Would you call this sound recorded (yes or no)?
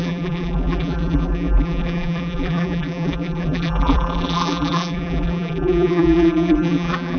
no